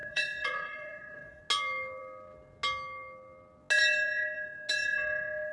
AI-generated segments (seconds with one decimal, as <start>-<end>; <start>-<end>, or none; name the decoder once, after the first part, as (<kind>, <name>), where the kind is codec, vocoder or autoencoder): 0.0-1.4 (vocoder, Vocos)

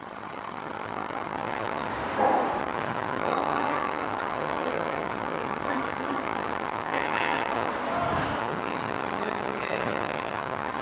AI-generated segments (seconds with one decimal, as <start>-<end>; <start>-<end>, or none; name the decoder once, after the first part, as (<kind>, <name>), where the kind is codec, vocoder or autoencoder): 0.0-1.9 (vocoder, HiFi-GAN); 2.6-7.7; 8.4-10.8

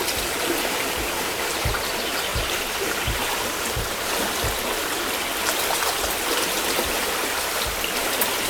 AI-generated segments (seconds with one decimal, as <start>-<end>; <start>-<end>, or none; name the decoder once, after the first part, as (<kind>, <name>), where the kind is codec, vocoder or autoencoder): 2.3-3.3 (vocoder, BigVGAN v2)